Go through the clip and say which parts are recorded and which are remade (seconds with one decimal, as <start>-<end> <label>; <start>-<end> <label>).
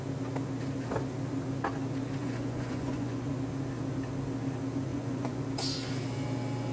0.0-2.2 recorded; 2.2-3.3 remade; 3.3-4.9 recorded; 4.9-5.4 remade; 5.4-6.7 recorded